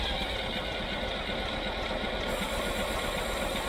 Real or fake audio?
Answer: fake